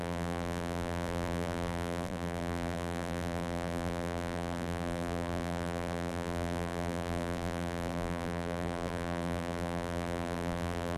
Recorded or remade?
remade